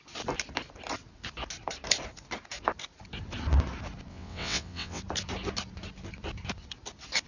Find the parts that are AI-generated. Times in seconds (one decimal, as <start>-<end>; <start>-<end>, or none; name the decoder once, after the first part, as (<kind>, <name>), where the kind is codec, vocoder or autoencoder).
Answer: 4.1-5.0 (vocoder, WaveNeXt)